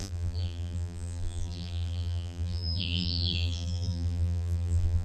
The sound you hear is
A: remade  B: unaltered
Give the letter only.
A